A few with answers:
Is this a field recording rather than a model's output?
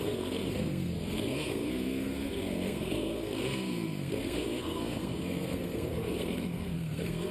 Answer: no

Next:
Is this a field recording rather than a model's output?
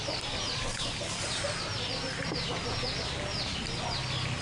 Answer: yes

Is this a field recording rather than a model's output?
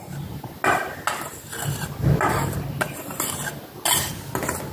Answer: yes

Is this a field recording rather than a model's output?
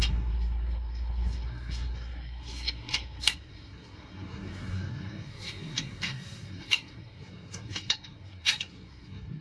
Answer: no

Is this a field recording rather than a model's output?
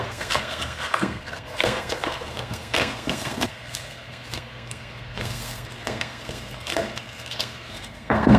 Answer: no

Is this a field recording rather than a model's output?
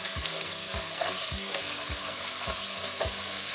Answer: no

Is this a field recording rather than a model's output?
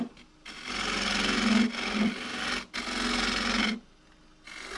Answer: yes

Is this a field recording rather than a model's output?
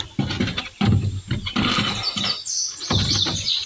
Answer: yes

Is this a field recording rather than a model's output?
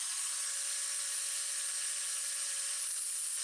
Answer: yes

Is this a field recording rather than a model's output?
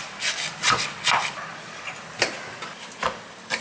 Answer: yes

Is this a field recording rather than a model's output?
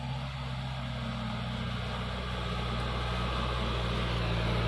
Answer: yes